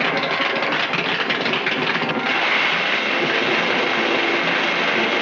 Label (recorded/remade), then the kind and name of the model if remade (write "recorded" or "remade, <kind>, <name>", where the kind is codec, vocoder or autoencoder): recorded